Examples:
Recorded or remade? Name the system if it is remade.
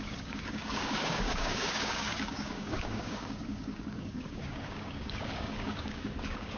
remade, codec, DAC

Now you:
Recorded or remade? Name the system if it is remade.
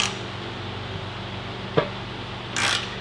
recorded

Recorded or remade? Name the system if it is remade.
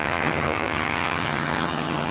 remade, vocoder, HiFi-GAN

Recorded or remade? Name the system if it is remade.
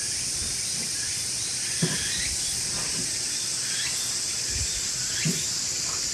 recorded